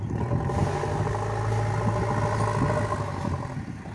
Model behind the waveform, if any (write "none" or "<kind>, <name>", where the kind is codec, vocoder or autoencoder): none